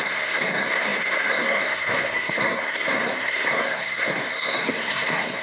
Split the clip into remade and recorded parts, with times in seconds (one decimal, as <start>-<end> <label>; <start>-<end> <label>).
0.0-5.4 remade